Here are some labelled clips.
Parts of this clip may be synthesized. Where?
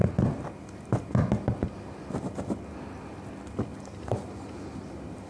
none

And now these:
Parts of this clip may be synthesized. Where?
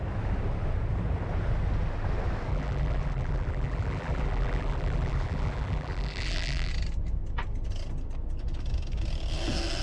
2.5-6.7 (vocoder, BigVGAN v2)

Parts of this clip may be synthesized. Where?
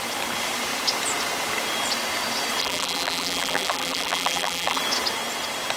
2.6-4.8 (vocoder, BigVGAN v2)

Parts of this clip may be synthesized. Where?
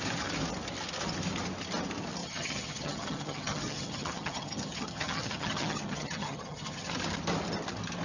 2.2-6.9 (vocoder, HiFi-GAN)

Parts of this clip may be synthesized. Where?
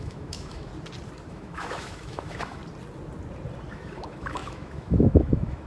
0.0-0.7 (autoencoder, DAC-VAE); 1.3-2.6; 3.7-5.7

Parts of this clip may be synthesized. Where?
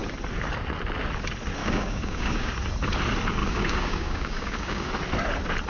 1.6-2.5 (codec, DAC); 3.4-4.9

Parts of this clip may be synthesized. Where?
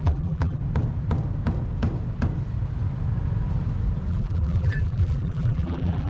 0.0-0.6 (vocoder, BigVGAN v2); 4.1-6.1